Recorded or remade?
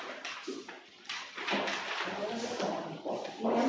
recorded